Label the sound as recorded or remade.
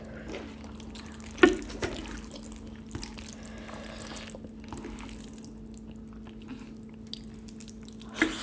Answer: recorded